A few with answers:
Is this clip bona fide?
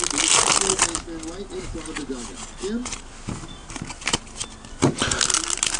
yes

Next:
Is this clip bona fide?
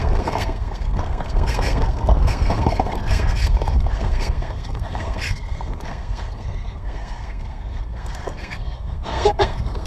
no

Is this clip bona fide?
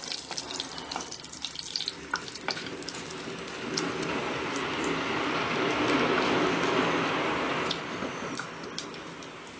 yes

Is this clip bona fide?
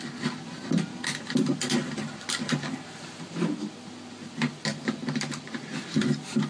yes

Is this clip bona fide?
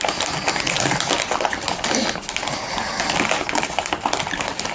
yes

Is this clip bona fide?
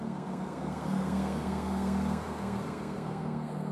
no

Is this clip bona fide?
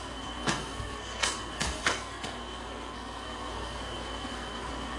no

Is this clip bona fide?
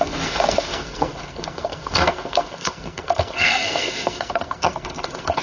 no